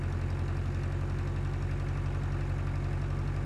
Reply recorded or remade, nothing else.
recorded